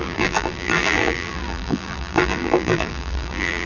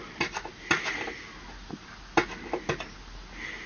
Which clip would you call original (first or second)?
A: second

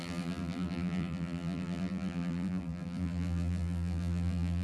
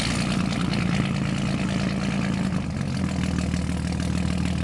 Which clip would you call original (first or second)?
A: second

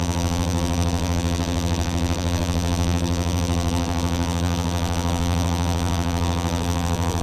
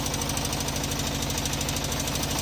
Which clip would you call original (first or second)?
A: second